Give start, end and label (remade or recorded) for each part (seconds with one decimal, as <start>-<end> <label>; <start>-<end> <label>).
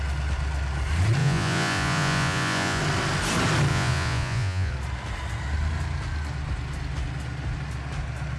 0.0-1.2 recorded; 1.2-2.8 remade; 2.8-3.7 recorded; 3.7-4.7 remade; 4.7-8.4 recorded